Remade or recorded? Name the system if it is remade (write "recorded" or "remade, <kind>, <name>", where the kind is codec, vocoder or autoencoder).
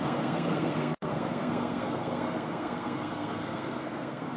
remade, codec, SNAC